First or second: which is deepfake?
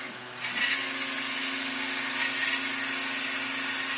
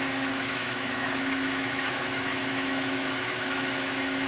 second